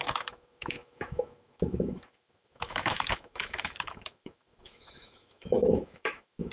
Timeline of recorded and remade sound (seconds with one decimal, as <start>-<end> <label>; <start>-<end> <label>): 0.0-6.5 remade